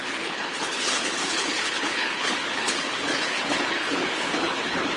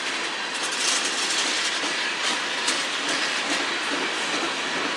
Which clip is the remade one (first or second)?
first